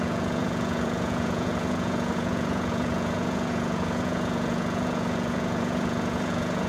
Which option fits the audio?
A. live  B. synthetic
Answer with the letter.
B